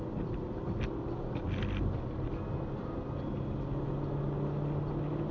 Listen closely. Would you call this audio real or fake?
real